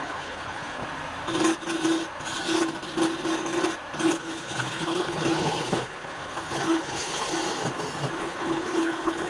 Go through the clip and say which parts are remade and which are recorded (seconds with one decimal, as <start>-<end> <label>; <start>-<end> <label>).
0.0-0.8 remade; 0.8-4.1 recorded; 4.1-7.3 remade; 7.3-8.2 recorded; 8.2-9.3 remade